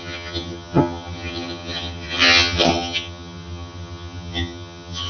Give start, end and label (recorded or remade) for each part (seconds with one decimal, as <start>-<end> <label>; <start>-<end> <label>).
0.0-5.1 remade